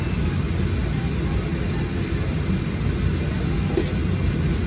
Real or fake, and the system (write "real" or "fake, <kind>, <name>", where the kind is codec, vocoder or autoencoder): real